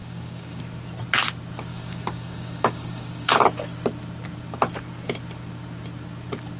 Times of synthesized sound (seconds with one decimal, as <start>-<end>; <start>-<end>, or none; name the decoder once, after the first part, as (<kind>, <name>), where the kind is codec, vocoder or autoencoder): 0.0-0.6 (codec, DAC); 1.7-3.4